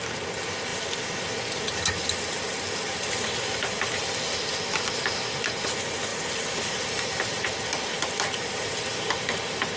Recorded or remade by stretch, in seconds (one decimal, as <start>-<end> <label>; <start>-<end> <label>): 0.0-6.1 recorded; 6.1-7.9 remade; 7.9-9.8 recorded